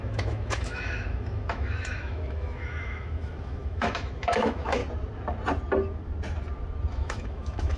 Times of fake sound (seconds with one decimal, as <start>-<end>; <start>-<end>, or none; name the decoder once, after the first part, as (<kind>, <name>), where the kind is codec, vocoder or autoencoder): 0.0-4.8 (autoencoder, DAC-VAE); 6.9-7.8